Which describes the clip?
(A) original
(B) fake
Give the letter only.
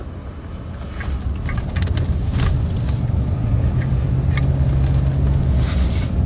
A